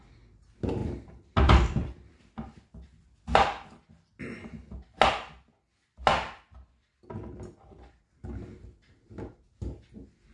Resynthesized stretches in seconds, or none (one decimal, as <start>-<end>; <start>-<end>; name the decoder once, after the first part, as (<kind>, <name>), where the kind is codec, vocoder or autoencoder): 0.8-2.2 (vocoder, BigVGAN v2); 5.9-6.7